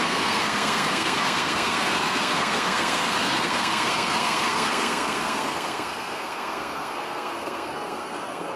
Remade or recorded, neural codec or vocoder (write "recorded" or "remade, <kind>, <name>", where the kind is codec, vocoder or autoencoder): remade, codec, SNAC